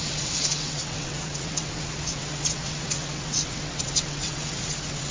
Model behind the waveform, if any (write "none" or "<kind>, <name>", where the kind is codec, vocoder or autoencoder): vocoder, WaveNeXt